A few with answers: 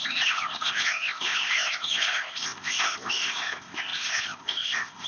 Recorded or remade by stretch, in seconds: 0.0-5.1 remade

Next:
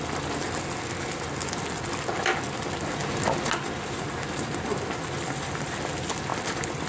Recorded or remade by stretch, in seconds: 0.0-6.9 recorded

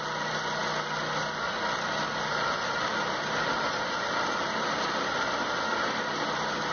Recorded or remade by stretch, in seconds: 0.0-6.7 recorded

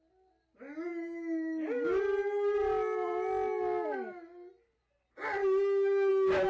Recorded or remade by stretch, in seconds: 0.0-6.5 recorded